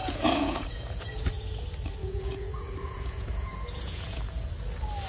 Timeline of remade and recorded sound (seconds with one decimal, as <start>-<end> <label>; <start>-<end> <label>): 0.0-1.6 remade; 1.6-2.0 recorded; 2.0-4.5 remade; 4.5-5.1 recorded

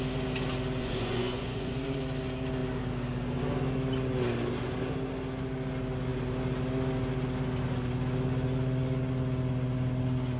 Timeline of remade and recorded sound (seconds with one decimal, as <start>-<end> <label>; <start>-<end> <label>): 0.0-0.8 recorded; 0.8-2.0 remade; 2.0-10.4 recorded

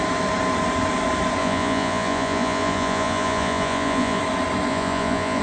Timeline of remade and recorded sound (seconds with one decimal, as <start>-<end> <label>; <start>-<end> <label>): 0.0-1.4 recorded; 1.4-4.2 remade; 4.2-4.7 recorded; 4.7-5.4 remade

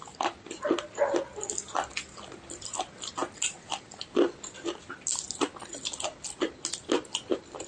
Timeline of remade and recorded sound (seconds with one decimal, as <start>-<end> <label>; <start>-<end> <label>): 0.0-7.7 recorded

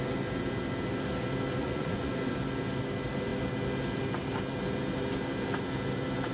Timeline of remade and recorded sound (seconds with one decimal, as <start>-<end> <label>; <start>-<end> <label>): 0.0-1.6 recorded; 1.6-2.1 remade; 2.1-6.3 recorded

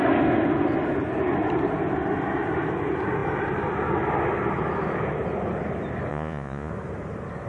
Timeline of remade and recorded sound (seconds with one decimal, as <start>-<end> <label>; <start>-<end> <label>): 0.0-6.1 recorded; 6.1-6.7 remade; 6.7-7.5 recorded

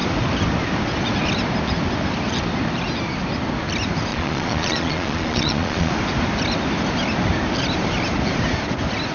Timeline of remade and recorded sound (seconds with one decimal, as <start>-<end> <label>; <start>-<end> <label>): 0.0-4.1 recorded; 4.1-5.9 remade; 5.9-9.1 recorded